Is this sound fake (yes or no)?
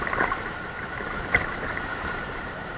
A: yes